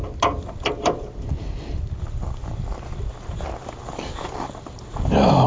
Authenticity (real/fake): real